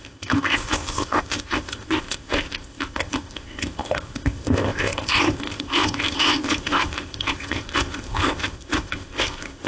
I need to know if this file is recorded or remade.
remade